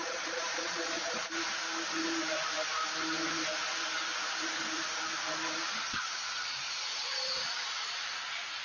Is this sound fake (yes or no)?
yes